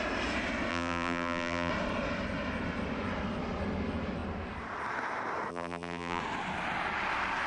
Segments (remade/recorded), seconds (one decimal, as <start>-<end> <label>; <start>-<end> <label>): 0.0-0.7 recorded; 0.7-1.7 remade; 1.7-5.5 recorded; 5.5-6.2 remade; 6.2-7.5 recorded